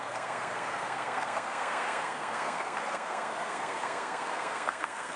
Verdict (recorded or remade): remade